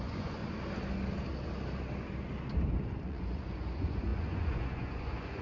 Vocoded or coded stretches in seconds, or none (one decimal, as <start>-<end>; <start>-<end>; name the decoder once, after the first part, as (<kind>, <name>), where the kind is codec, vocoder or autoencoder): 0.0-0.4 (vocoder, Vocos); 2.7-5.4